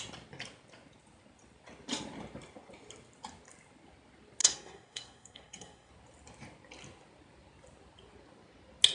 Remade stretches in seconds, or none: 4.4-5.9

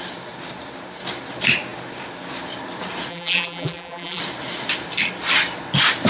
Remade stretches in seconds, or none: 3.1-4.2

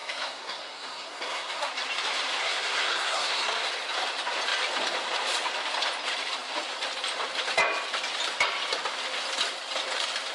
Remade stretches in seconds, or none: 0.0-1.7; 2.4-3.7

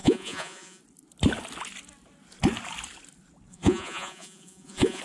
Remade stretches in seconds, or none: 0.0-0.8; 3.5-5.0

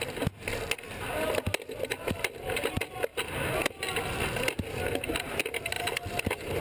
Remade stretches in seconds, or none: none

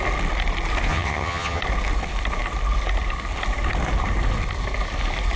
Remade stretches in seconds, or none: 0.9-1.6

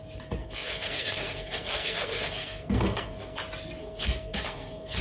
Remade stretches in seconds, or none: 0.4-3.4; 3.8-5.0

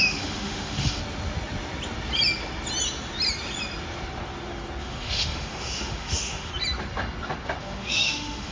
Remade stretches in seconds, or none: 0.0-1.0; 4.8-6.5; 7.6-8.5